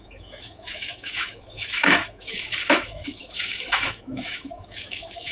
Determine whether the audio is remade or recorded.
remade